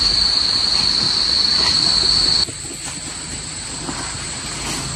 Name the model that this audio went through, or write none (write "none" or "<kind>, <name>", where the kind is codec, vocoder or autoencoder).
none